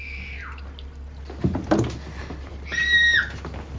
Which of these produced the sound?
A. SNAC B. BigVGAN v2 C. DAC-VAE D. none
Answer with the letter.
D